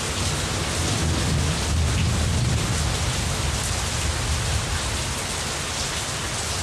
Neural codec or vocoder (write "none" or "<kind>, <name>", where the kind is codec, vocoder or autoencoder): none